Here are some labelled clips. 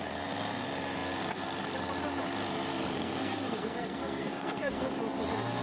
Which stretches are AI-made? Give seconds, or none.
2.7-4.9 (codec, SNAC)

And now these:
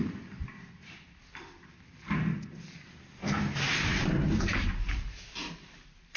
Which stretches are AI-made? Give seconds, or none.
3.9-5.7 (vocoder, BigVGAN v2)

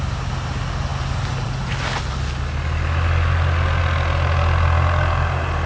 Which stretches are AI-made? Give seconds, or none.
none

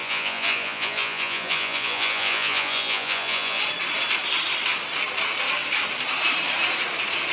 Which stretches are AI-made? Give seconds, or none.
0.0-3.6 (vocoder, Vocos)

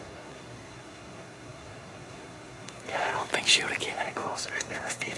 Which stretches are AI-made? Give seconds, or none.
0.0-3.3 (codec, SNAC); 3.9-5.2

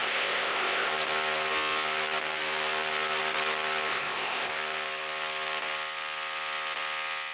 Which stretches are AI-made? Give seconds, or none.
0.0-0.9 (codec, ZipCodec); 3.9-4.5